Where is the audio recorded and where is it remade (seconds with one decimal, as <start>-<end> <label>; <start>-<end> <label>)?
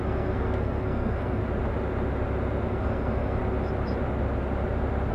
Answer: 0.0-1.4 remade; 1.4-2.7 recorded; 2.7-3.4 remade; 3.4-5.1 recorded